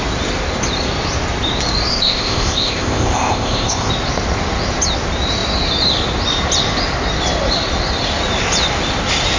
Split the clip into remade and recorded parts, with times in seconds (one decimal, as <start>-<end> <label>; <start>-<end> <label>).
0.0-1.9 recorded; 1.9-3.9 remade; 3.9-9.4 recorded